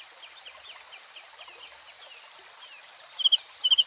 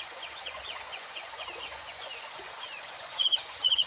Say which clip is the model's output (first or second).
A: second